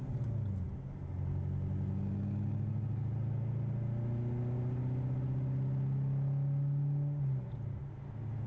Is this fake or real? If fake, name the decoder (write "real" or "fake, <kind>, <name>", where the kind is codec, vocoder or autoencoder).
real